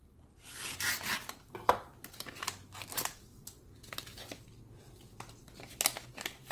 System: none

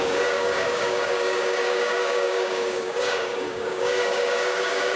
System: codec, DAC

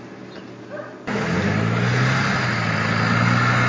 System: none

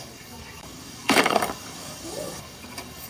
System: codec, DAC